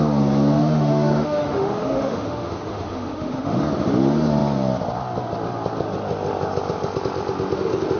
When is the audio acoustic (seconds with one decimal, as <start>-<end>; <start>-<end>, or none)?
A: 0.0-0.6; 3.6-8.0